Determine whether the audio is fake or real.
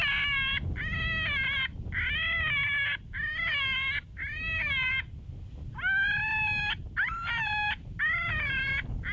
real